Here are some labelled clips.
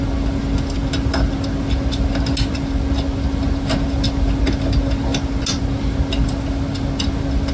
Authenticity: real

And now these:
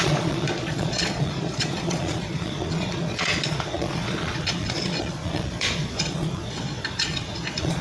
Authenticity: fake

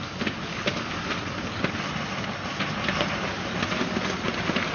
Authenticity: real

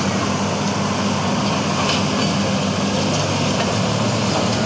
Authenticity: real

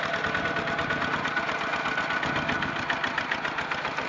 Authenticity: real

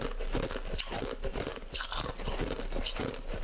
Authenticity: real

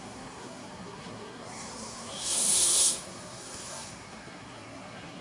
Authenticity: fake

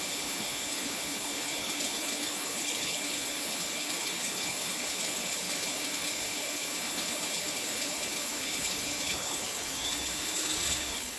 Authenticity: fake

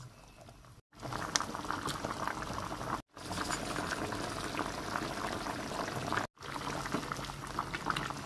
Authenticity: real